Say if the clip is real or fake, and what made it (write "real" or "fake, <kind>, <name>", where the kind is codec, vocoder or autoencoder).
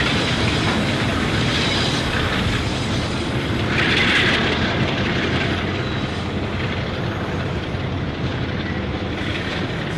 real